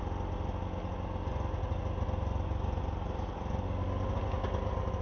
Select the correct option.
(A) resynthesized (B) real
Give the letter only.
B